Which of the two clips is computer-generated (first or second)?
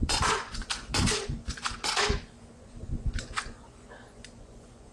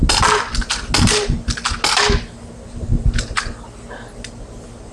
first